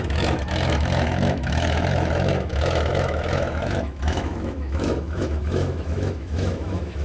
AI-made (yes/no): yes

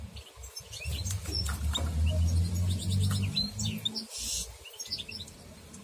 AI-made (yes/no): no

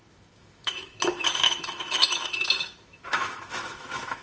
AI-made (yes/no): yes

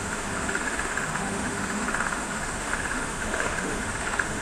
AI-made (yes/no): yes